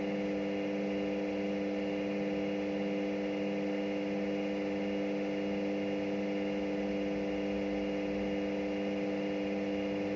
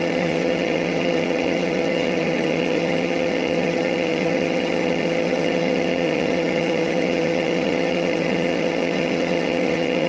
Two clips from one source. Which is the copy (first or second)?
second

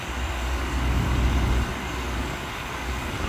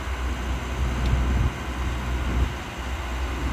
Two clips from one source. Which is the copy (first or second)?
first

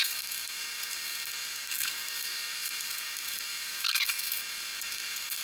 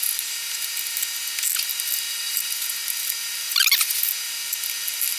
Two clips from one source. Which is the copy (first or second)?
first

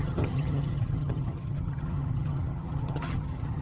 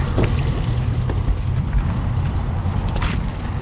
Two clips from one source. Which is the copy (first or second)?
first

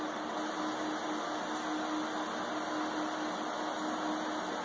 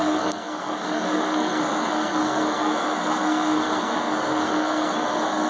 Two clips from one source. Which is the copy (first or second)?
second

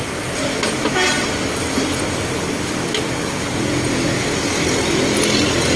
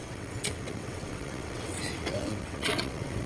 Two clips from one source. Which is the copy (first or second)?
second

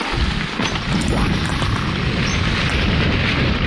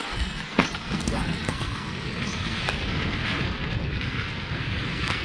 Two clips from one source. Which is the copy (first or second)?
second